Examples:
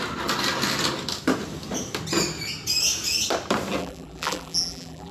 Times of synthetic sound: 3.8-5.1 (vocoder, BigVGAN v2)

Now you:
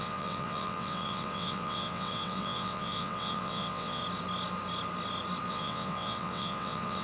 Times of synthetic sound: 0.0-4.0 (vocoder, WaveNeXt); 5.5-7.0

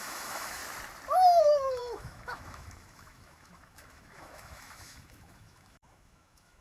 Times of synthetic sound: 0.0-0.6 (autoencoder, DAC-VAE); 1.4-6.6

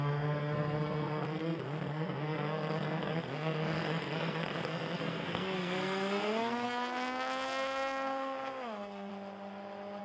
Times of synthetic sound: 0.0-9.1 (codec, SNAC)

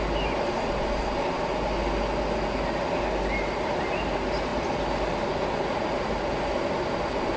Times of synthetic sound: none